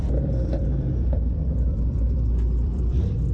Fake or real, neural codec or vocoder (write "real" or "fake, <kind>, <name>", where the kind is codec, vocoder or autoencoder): fake, vocoder, BigVGAN v2